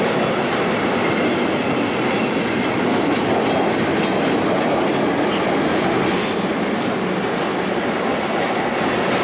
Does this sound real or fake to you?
real